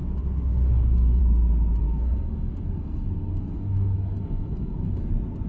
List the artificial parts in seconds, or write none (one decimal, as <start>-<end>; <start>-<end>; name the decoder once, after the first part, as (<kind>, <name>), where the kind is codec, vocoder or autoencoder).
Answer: 0.0-1.2 (codec, SNAC); 1.8-5.1